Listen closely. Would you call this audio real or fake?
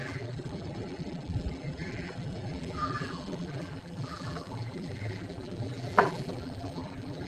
fake